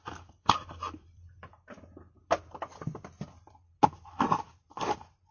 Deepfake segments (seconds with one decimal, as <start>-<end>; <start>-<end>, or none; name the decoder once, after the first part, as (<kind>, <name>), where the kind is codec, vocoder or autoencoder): 0.0-1.5 (vocoder, BigVGAN v2)